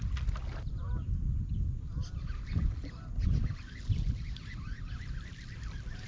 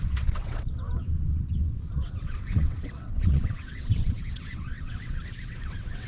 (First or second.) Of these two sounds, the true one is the first